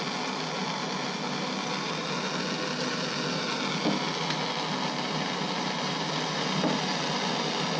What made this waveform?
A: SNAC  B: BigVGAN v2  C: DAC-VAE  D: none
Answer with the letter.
D